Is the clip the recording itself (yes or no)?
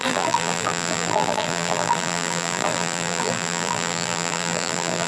no